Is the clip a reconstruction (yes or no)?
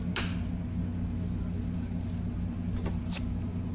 no